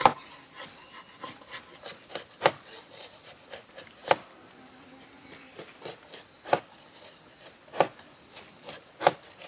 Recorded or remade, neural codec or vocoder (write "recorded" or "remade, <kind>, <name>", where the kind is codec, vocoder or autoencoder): recorded